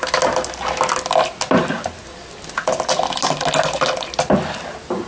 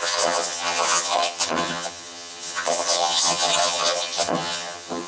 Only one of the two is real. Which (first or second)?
first